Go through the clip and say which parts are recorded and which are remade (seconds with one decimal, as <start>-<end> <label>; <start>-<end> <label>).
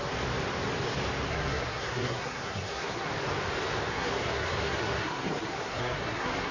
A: 0.0-1.3 recorded; 1.3-3.1 remade; 3.1-3.9 recorded; 3.9-6.5 remade